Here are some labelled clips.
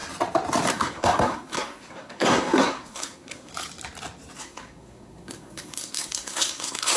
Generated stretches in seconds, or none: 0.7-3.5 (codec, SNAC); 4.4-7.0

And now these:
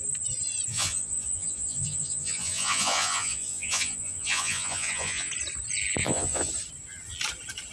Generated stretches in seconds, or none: 0.7-5.3 (vocoder, Vocos); 6.0-6.5

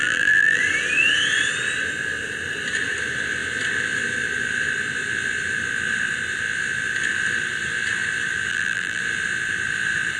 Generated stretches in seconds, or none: 0.0-0.6 (vocoder, BigVGAN v2); 8.5-9.0

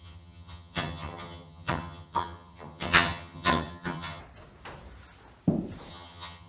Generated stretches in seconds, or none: 0.0-4.2 (vocoder, HiFi-GAN); 5.9-6.5

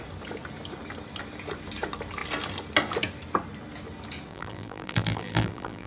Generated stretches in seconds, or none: 4.3-5.9 (vocoder, BigVGAN v2)

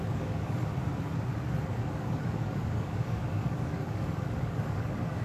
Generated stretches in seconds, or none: 0.0-0.7 (codec, DAC); 1.7-5.2

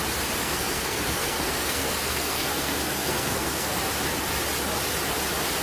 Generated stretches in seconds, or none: 0.4-3.8 (codec, SNAC)

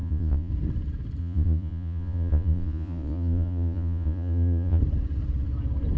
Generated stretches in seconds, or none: 0.0-0.5 (vocoder, Vocos); 1.2-4.8